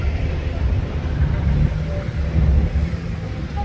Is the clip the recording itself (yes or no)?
yes